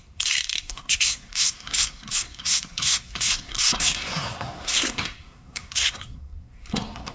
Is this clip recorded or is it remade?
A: remade